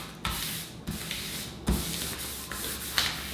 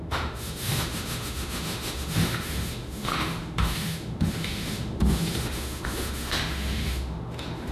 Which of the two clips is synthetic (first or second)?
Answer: second